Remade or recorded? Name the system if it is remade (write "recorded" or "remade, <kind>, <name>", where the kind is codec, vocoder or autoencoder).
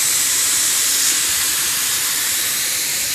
remade, vocoder, BigVGAN v2